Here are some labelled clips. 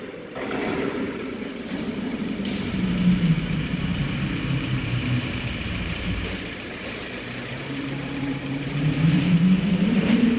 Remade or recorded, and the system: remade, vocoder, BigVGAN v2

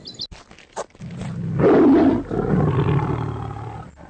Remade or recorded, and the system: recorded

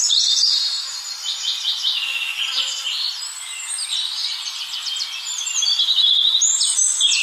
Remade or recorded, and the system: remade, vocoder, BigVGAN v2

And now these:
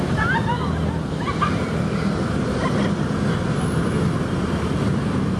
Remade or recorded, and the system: recorded